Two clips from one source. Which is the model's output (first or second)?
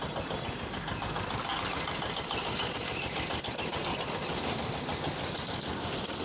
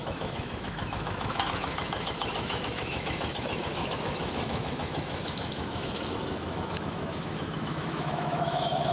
second